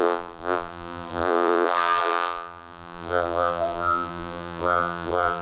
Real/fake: fake